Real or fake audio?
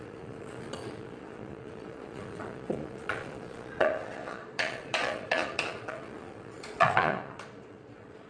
fake